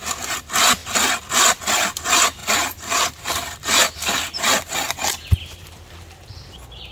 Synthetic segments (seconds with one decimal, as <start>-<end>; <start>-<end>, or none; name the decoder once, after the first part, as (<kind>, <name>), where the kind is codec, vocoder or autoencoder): 2.4-5.4 (vocoder, BigVGAN v2)